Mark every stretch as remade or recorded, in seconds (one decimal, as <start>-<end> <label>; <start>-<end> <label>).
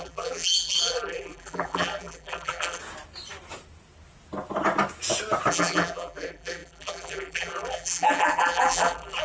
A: 0.0-2.8 remade; 2.8-5.5 recorded; 5.5-9.2 remade